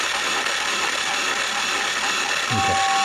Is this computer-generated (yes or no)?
no